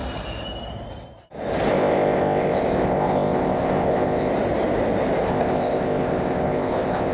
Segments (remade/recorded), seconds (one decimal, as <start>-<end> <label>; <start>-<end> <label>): 0.0-1.7 recorded; 1.7-4.3 remade; 4.3-5.3 recorded; 5.3-7.1 remade